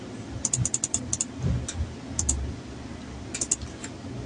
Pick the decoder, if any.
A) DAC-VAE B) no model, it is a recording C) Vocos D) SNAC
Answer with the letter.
B